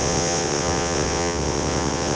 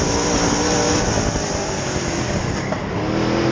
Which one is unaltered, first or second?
second